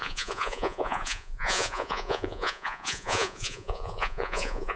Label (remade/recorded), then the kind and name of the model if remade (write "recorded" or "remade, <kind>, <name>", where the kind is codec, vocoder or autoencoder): remade, vocoder, Vocos